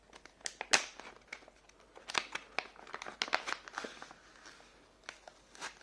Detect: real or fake real